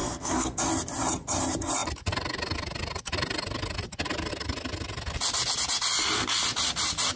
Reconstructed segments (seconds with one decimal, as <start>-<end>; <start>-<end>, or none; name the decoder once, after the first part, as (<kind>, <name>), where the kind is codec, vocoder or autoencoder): 0.0-0.6 (codec, SNAC)